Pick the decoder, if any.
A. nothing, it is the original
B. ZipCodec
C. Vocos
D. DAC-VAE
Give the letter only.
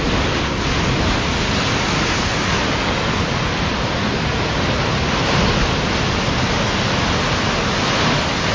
A